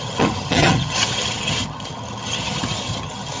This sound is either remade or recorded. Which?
remade